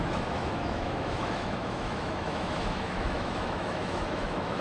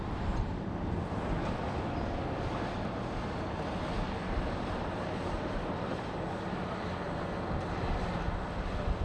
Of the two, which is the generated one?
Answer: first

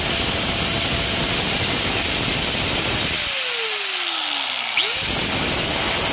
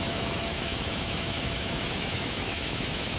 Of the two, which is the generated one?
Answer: second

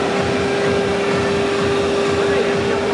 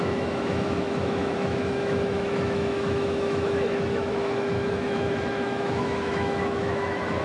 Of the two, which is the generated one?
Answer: second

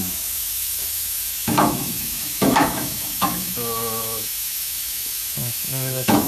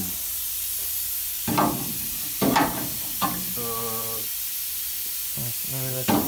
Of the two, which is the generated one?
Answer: first